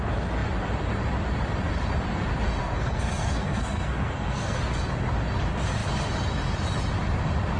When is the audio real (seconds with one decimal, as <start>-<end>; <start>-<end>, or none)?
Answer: 0.0-2.6; 4.6-7.6